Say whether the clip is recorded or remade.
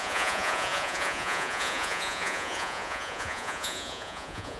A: remade